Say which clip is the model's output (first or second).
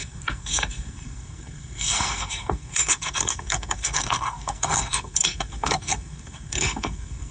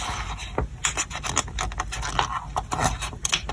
first